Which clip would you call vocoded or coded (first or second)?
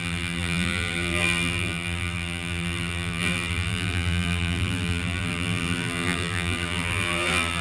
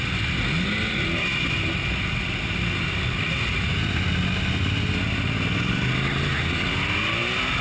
first